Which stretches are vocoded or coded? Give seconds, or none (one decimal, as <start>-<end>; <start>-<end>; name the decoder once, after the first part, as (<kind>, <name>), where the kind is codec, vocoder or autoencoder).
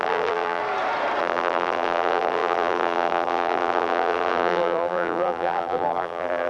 0.0-0.6 (vocoder, BigVGAN v2); 1.2-6.5